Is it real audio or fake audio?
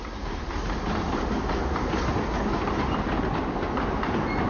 real